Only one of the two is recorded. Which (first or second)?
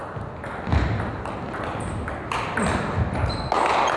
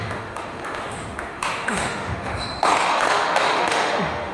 first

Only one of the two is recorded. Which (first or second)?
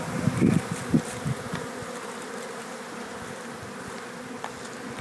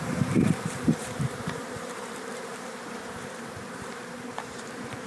first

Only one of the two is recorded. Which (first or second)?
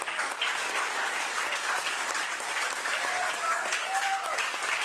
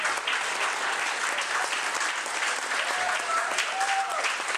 second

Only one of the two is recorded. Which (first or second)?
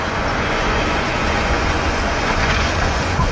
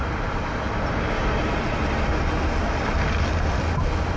second